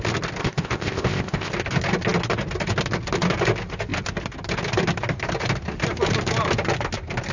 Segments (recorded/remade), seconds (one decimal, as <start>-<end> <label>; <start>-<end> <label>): 0.0-0.4 recorded; 0.4-1.5 remade; 1.5-7.3 recorded